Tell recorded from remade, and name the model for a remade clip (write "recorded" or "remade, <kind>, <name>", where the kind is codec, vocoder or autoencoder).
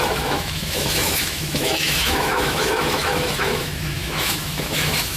remade, autoencoder, DAC-VAE